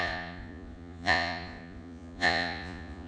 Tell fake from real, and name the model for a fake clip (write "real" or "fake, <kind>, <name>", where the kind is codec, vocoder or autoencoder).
fake, vocoder, Vocos